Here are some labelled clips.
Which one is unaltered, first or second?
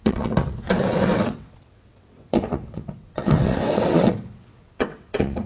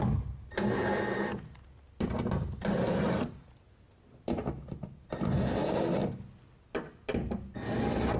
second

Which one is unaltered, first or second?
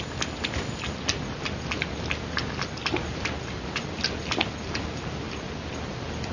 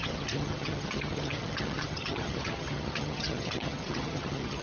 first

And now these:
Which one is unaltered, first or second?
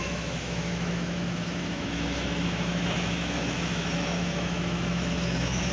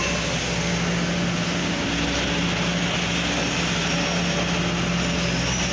second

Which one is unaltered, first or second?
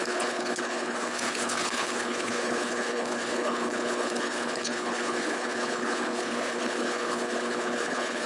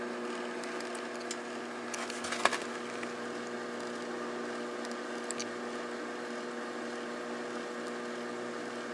second